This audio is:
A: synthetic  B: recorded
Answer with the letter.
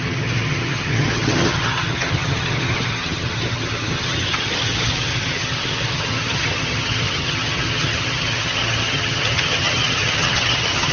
A